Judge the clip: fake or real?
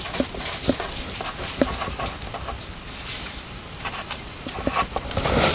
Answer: real